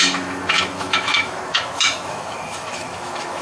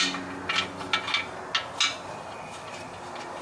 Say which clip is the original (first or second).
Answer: second